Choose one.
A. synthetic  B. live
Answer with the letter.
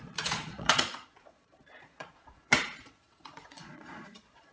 A